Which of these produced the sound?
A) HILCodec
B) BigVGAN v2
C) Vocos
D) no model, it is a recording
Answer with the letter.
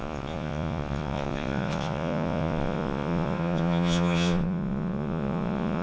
C